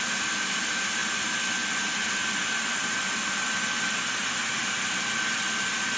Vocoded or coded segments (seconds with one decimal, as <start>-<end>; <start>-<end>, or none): none